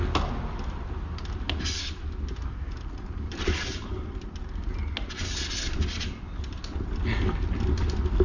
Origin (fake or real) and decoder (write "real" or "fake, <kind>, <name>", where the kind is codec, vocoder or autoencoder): real